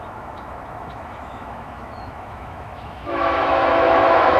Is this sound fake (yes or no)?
yes